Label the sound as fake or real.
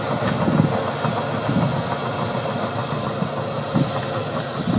real